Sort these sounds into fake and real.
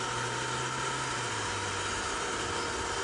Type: real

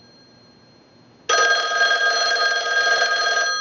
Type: real